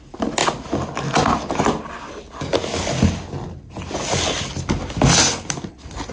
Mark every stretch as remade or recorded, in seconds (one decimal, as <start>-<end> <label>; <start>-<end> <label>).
0.0-6.1 recorded